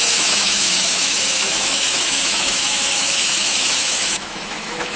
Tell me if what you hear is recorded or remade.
remade